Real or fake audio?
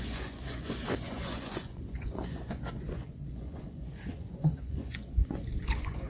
fake